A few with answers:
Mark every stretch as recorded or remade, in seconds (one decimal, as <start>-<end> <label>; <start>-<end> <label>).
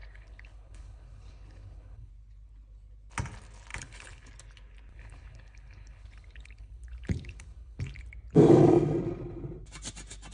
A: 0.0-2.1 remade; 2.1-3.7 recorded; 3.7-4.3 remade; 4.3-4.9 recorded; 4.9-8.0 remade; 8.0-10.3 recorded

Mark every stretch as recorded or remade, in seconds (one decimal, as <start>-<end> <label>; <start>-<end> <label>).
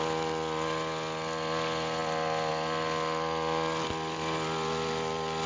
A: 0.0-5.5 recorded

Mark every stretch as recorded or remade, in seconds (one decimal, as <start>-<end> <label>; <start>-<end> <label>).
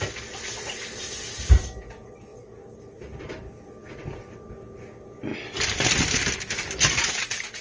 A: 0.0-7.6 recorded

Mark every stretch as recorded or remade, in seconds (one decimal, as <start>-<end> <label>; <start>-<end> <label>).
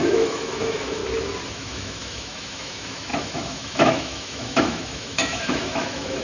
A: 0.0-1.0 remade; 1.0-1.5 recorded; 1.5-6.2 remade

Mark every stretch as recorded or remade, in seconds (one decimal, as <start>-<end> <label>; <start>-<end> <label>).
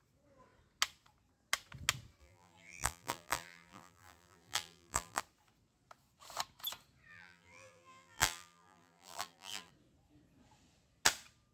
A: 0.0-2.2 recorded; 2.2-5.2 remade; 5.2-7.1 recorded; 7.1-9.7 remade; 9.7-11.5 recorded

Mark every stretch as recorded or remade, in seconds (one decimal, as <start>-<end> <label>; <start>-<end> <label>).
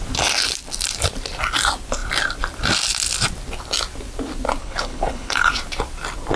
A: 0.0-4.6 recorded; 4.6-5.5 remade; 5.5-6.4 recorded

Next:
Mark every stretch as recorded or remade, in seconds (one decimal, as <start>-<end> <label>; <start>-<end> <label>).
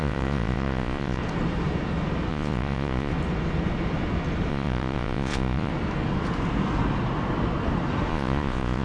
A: 0.0-1.2 remade; 1.2-2.3 recorded; 2.3-3.1 remade; 3.1-4.5 recorded; 4.5-5.7 remade; 5.7-8.1 recorded; 8.1-8.8 remade